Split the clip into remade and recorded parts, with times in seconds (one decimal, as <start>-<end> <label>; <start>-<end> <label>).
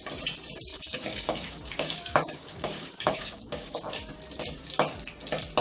0.0-0.7 recorded; 0.7-3.8 remade; 3.8-5.6 recorded